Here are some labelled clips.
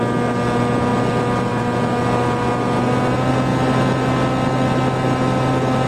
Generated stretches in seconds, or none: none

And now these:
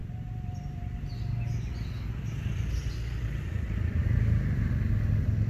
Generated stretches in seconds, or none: none

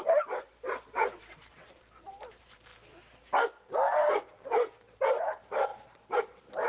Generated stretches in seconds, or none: 0.0-2.7; 4.1-6.7